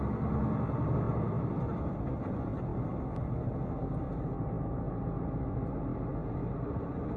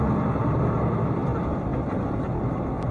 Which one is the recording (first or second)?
first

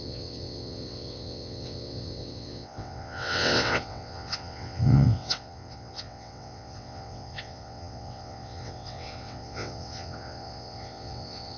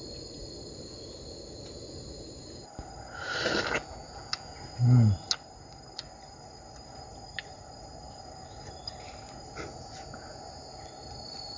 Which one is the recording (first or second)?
second